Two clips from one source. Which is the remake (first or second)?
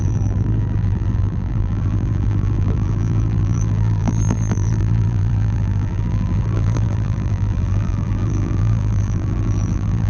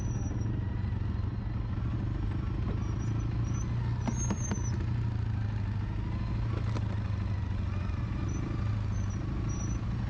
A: first